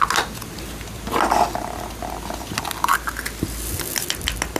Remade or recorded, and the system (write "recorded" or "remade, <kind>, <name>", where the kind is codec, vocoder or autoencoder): recorded